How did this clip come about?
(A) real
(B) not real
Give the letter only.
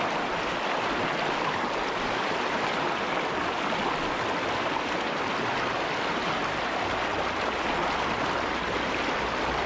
A